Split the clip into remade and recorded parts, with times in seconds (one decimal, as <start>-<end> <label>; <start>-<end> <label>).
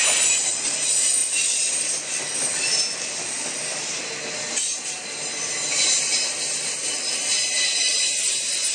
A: 0.0-8.7 recorded